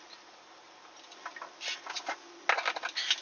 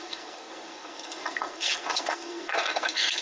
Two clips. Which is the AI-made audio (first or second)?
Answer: second